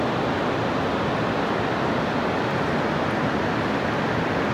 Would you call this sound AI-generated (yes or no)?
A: no